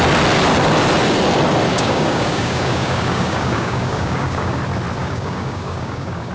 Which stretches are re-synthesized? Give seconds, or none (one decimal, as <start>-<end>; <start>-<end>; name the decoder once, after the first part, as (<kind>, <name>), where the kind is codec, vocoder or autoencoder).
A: 1.7-4.6 (codec, DAC); 5.0-6.3